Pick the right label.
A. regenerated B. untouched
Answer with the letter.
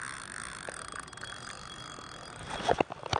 B